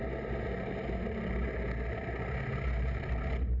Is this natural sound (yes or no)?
yes